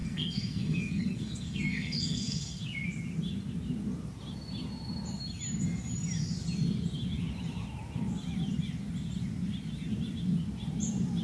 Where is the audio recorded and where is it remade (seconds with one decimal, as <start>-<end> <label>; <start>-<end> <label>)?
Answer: 0.0-2.6 remade; 2.6-11.2 recorded